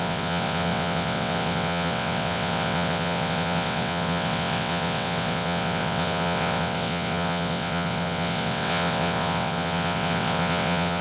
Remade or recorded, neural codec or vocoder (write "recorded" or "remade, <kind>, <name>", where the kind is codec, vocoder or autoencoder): remade, vocoder, WaveNeXt